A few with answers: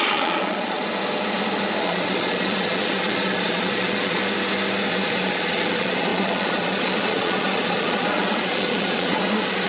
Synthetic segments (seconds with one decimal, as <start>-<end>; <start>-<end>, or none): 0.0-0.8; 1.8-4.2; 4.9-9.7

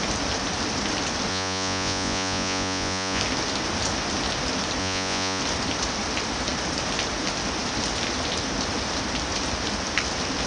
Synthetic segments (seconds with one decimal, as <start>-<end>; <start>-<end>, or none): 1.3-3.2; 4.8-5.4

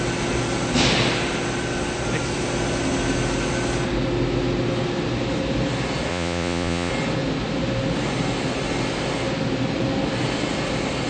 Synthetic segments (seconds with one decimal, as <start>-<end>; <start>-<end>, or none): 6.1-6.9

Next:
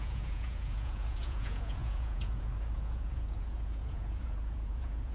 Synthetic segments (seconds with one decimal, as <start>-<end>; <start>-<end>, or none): 0.0-5.1